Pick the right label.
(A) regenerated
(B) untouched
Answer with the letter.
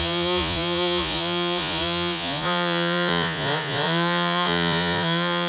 A